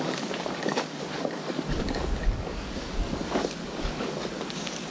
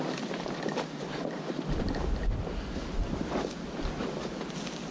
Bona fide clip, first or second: second